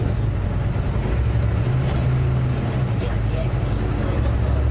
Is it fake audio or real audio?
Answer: real